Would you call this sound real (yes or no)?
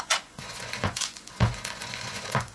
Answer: no